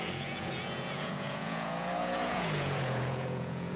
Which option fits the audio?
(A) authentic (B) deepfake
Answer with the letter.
B